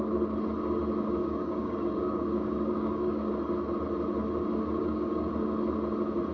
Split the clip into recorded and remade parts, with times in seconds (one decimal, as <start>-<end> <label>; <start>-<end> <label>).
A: 0.0-1.2 recorded; 1.2-3.3 remade; 3.3-4.8 recorded; 4.8-5.3 remade; 5.3-6.3 recorded